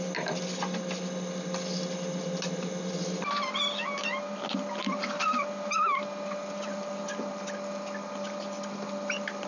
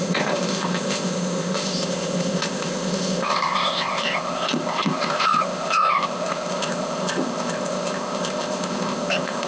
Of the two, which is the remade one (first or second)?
second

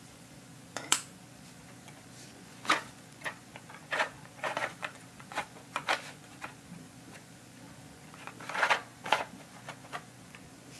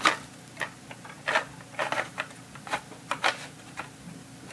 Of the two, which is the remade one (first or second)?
first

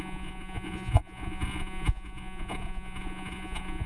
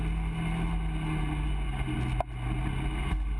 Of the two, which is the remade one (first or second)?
first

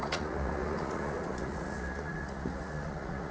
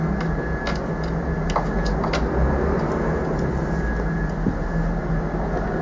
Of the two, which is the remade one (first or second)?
first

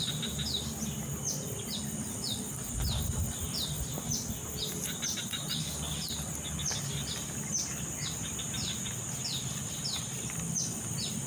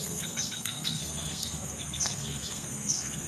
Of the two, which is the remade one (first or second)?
second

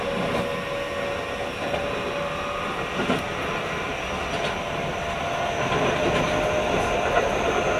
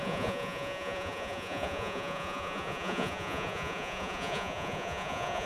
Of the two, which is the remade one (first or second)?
second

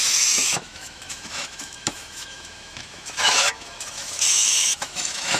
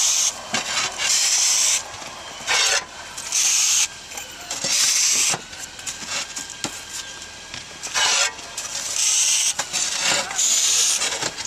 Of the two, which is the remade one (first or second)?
first